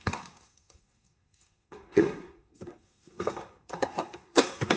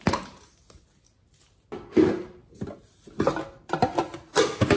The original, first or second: second